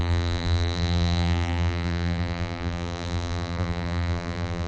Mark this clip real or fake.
fake